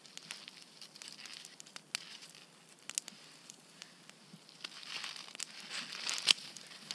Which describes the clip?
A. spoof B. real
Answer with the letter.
B